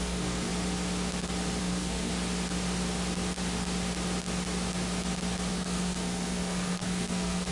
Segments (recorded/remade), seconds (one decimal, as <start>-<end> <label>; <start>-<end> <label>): 0.0-0.5 remade; 0.5-1.6 recorded; 1.6-2.1 remade; 2.1-5.5 recorded; 5.5-7.5 remade